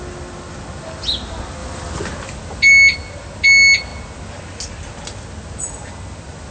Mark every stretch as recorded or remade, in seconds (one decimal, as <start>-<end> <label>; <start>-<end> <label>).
0.0-6.5 recorded